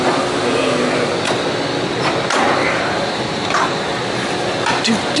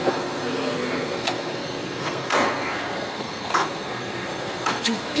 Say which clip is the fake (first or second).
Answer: second